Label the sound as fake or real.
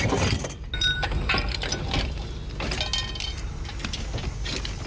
real